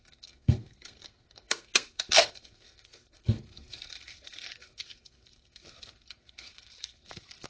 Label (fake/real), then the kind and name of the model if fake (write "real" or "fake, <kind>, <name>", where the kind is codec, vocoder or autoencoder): fake, codec, SNAC